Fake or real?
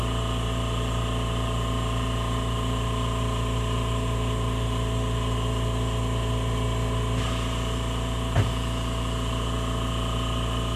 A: real